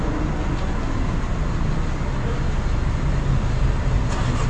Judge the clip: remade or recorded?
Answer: recorded